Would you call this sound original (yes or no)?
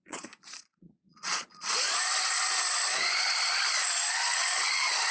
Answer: no